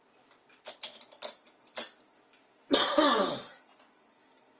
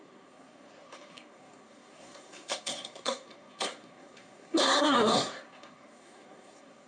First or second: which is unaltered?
first